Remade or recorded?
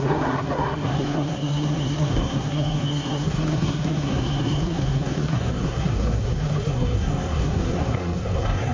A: remade